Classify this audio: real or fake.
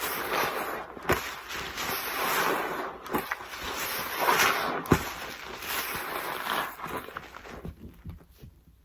real